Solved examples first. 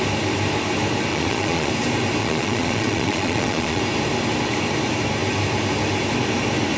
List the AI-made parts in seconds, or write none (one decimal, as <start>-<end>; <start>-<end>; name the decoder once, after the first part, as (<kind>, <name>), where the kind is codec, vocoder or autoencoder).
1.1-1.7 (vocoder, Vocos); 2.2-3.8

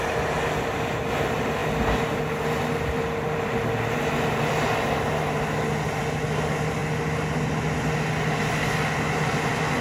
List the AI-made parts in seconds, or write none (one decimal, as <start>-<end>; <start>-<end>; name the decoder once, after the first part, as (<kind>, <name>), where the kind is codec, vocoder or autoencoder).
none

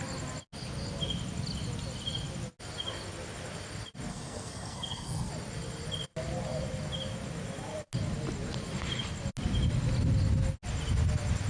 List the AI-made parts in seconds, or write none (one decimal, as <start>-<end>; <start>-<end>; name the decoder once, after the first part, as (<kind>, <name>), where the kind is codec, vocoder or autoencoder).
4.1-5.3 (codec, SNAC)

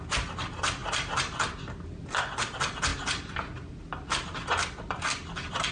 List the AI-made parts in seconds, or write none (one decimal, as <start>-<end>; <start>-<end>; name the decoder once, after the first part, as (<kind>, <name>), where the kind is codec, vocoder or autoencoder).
none

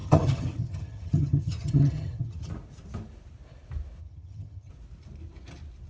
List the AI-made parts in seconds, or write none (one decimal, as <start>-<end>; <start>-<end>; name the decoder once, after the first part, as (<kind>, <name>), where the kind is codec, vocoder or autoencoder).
0.0-2.5 (vocoder, HiFi-GAN); 4.0-4.7

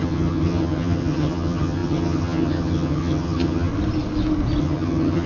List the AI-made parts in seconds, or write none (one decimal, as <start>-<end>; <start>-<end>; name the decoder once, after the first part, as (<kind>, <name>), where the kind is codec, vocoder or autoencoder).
0.0-3.7 (vocoder, HiFi-GAN); 4.6-5.3

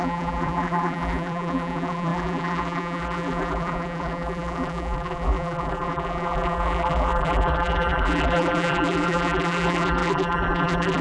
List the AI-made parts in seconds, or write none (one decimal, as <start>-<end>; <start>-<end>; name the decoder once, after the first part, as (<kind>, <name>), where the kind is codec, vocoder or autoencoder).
0.0-11.0 (vocoder, BigVGAN v2)

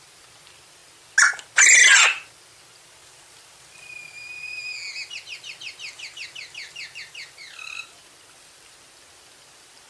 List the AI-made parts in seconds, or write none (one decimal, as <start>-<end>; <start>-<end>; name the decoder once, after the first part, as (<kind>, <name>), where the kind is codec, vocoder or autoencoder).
none